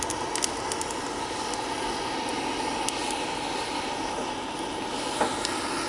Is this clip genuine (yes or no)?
yes